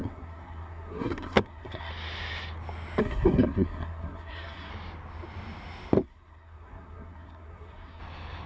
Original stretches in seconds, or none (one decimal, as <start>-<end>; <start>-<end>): 1.9-3.0; 4.7-6.0; 8.0-8.5